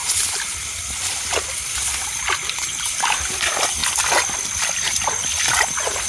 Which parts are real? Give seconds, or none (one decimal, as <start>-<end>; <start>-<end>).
0.0-6.1